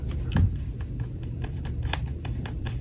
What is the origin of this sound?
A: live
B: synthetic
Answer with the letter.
B